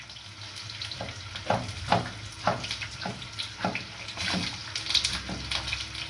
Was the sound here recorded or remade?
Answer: recorded